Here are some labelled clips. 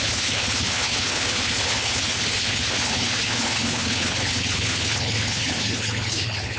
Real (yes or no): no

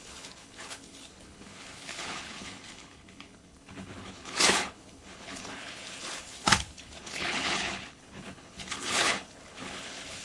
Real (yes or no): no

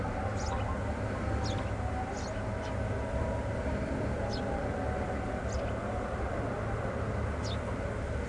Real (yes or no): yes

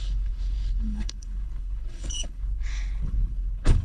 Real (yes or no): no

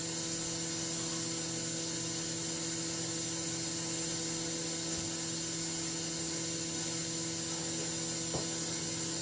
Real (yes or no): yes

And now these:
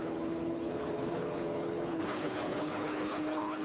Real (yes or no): no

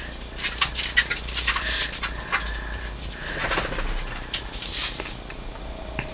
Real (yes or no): yes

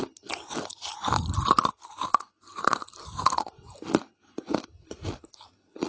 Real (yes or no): yes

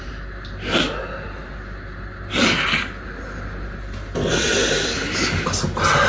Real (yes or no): yes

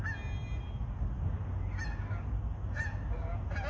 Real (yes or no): yes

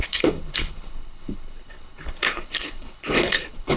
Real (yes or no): no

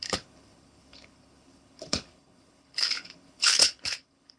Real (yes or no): no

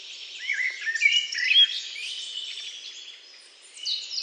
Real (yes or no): yes